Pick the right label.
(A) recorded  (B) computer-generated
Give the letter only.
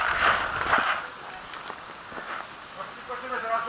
A